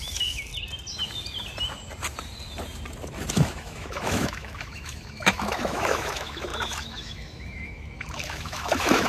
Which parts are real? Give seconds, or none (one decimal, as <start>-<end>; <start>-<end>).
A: 0.5-3.3